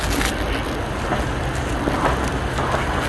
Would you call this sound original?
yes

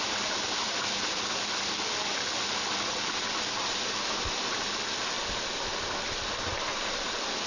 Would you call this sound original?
yes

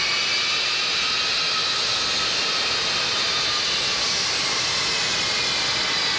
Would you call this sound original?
yes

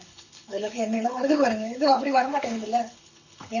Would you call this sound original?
no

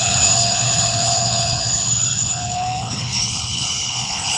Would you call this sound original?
no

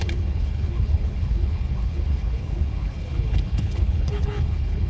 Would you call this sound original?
no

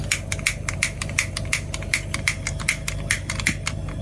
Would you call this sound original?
yes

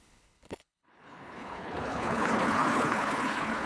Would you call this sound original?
no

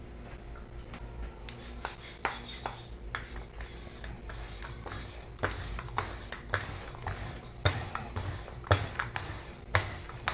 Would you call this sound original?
yes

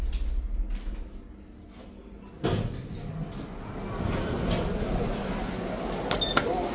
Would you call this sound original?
yes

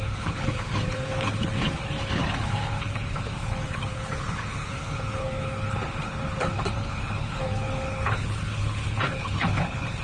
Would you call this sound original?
no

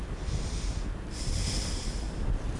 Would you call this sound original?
yes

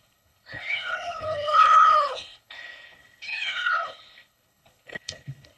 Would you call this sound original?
no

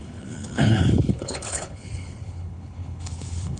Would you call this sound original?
no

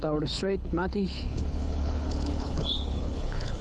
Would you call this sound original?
no